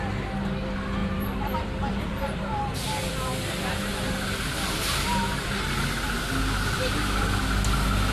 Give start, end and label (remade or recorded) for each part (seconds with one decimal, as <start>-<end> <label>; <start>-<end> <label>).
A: 0.0-1.0 recorded; 1.0-2.4 remade; 2.4-8.1 recorded

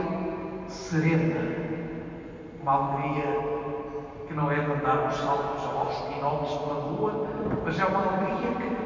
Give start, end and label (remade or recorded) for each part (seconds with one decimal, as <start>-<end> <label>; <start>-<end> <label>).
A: 0.0-7.2 recorded; 7.2-8.9 remade